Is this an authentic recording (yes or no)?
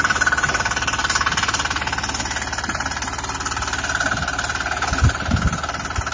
yes